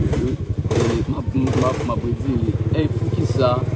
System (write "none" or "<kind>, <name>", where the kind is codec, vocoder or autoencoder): none